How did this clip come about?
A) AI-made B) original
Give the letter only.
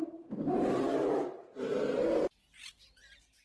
A